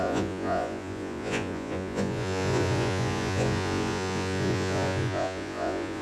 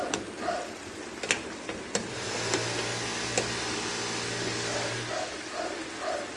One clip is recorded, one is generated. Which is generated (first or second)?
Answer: first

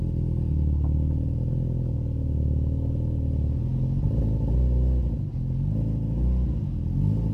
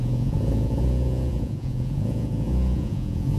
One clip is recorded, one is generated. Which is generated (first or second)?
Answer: second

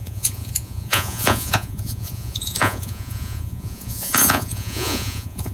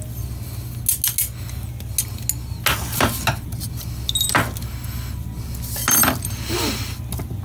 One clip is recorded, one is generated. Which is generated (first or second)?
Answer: first